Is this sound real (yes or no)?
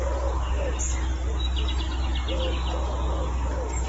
yes